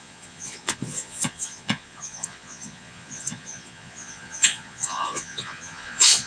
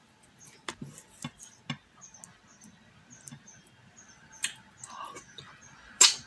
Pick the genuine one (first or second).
second